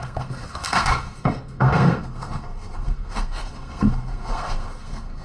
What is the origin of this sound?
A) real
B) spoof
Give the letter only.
B